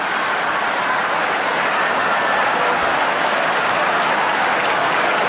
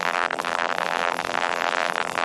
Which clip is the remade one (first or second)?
second